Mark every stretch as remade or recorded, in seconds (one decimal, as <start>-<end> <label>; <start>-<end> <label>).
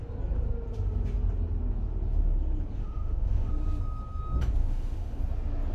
0.0-2.8 recorded; 2.8-3.5 remade; 3.5-4.6 recorded; 4.6-5.2 remade; 5.2-5.7 recorded